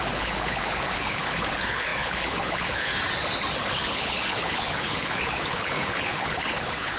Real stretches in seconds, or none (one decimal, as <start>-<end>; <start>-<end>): 2.9-3.6